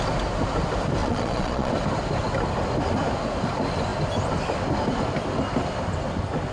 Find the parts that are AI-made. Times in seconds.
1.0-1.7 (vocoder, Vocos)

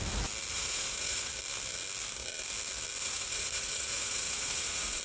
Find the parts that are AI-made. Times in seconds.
0.5-1.3 (vocoder, Vocos); 3.0-5.0

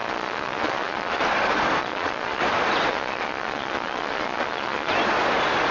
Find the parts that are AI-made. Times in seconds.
0.0-1.2 (vocoder, Vocos); 1.8-2.4; 2.9-4.9

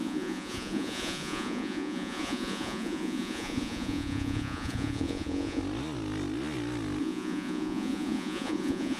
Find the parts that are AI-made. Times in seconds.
0.0-5.6 (vocoder, Vocos); 7.0-9.0

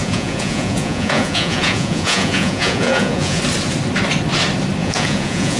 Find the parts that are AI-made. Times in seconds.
0.0-3.4 (vocoder, Vocos); 4.8-5.6